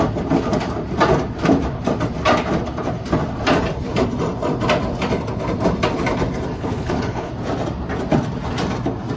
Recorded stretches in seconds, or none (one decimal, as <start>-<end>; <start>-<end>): 0.0-6.5; 7.3-9.2